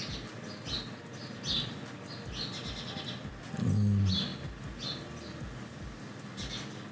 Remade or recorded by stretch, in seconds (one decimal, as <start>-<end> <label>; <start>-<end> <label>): 0.0-6.9 recorded